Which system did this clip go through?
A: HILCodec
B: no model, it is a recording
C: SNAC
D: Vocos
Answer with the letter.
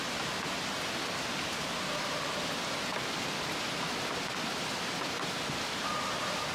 B